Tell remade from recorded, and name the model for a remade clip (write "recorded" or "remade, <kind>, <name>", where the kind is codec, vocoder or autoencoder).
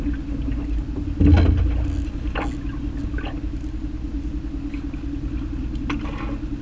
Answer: recorded